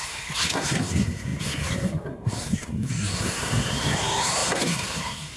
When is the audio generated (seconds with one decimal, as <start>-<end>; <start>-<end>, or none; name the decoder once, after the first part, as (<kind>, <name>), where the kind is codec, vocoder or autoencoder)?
0.0-5.4 (codec, SNAC)